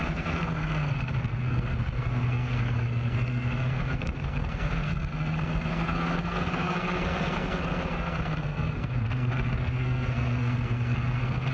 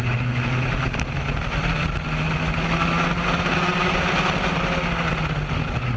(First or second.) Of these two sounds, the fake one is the first